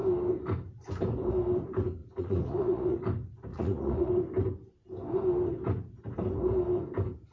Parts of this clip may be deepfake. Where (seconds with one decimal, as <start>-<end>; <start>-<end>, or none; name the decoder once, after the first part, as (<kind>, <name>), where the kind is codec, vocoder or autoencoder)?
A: 2.0-3.0 (vocoder, Vocos); 3.5-4.1

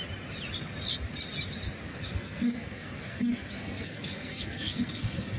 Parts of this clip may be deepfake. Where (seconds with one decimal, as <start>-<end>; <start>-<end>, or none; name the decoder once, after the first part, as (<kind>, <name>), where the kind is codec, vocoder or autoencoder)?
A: 1.9-5.4 (codec, SNAC)

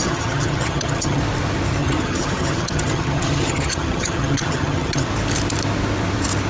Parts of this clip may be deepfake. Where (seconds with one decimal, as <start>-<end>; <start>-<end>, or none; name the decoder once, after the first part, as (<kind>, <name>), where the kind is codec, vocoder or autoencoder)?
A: 0.0-1.2 (vocoder, HiFi-GAN); 1.8-5.1

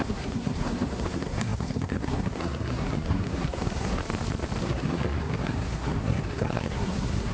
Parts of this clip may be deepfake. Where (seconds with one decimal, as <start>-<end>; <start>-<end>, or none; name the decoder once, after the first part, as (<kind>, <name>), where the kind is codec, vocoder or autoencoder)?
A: 0.0-4.0 (codec, SNAC); 4.6-7.3